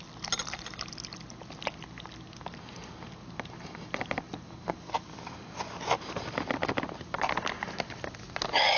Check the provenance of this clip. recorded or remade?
recorded